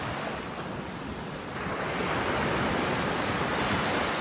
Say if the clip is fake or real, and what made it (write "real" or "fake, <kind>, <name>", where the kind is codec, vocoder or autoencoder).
real